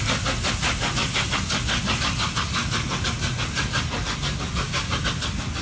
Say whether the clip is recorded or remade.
recorded